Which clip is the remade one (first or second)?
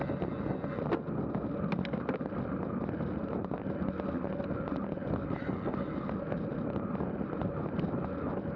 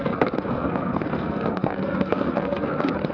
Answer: second